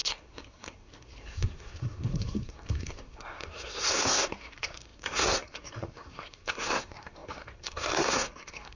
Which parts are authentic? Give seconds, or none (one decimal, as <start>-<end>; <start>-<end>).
none